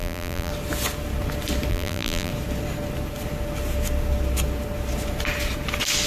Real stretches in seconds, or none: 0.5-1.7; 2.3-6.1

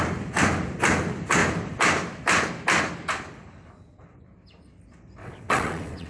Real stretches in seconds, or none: 0.0-5.2

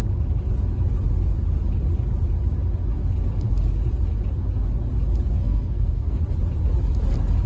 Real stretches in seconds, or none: 0.0-5.4; 6.2-7.5

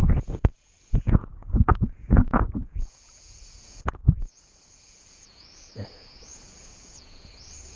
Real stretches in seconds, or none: none

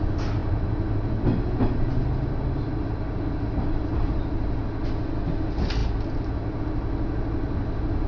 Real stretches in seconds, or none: 0.0-8.1

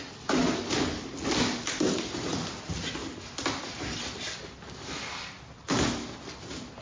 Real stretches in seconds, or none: 0.0-6.8

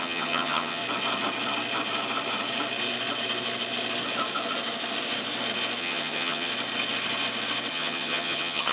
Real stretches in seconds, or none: 0.8-5.8; 6.5-7.7

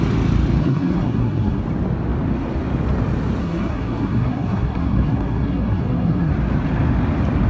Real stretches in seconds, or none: 0.0-0.6; 1.6-3.4; 6.3-7.5